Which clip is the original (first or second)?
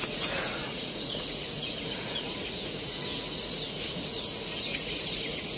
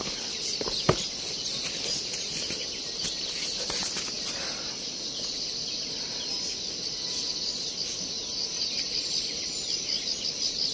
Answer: second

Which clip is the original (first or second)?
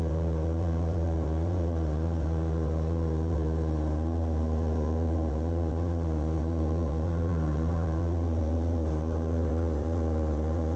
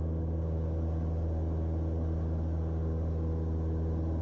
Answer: second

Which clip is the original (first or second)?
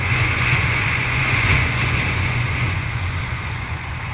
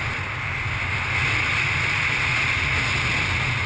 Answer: second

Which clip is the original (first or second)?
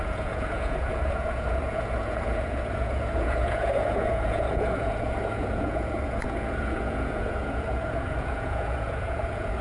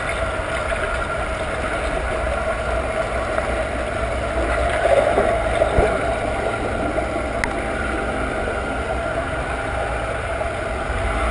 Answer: second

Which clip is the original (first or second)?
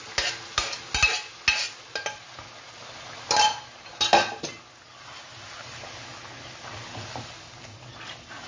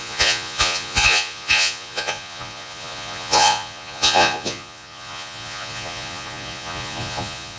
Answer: first